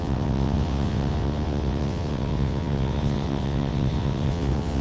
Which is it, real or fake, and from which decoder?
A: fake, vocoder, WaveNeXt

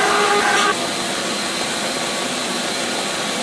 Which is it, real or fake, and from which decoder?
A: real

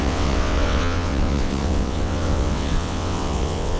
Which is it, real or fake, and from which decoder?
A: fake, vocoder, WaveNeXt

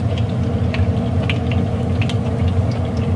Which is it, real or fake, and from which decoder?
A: real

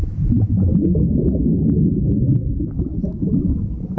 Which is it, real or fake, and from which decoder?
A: real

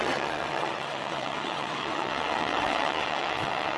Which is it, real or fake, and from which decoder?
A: fake, vocoder, WaveNeXt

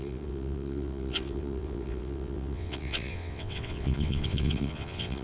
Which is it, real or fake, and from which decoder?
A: fake, vocoder, WaveNeXt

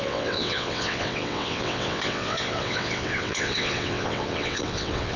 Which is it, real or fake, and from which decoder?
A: fake, vocoder, WaveNeXt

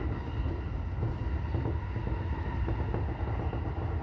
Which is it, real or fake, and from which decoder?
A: real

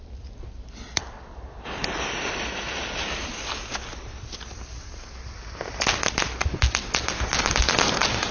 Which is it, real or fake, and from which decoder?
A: real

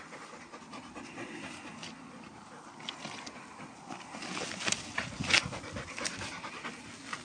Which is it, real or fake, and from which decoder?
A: real